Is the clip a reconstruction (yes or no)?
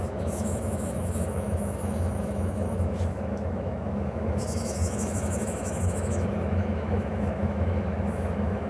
yes